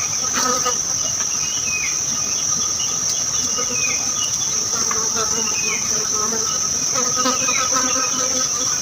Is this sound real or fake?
real